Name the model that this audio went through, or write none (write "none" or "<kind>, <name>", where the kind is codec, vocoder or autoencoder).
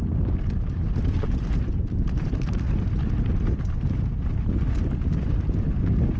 none